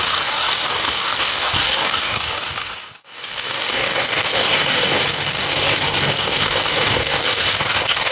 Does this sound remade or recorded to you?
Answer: remade